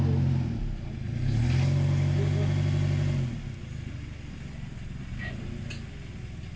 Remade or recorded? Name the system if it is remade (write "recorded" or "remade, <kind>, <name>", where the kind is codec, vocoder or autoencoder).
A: recorded